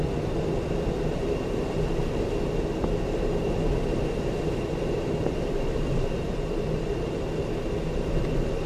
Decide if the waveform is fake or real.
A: real